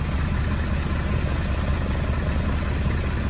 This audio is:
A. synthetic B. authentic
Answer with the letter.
B